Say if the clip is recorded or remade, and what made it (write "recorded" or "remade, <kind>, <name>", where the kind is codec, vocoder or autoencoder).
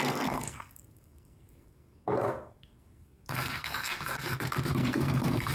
remade, codec, SNAC